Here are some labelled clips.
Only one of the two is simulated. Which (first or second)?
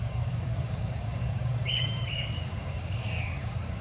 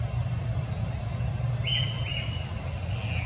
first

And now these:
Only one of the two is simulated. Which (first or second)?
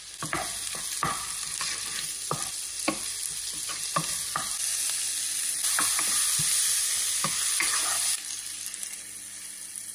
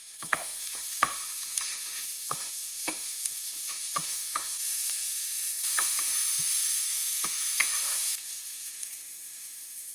second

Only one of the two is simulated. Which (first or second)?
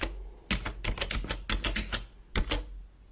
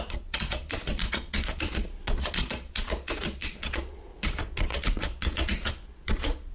second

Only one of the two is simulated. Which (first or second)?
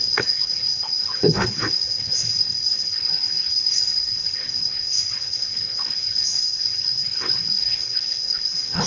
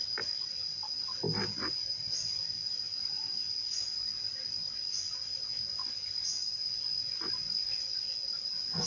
first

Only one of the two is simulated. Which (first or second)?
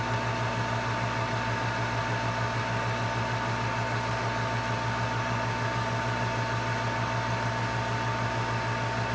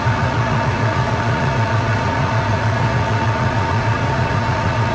second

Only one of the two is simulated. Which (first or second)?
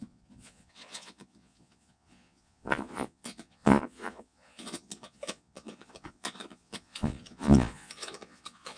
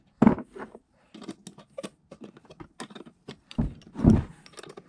first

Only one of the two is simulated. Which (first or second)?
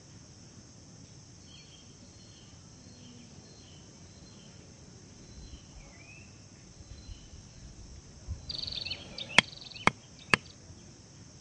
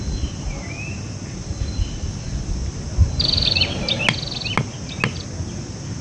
first